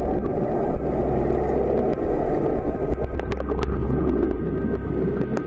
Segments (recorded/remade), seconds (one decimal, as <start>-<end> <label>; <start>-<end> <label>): 0.0-3.8 recorded; 3.8-4.4 remade; 4.4-5.5 recorded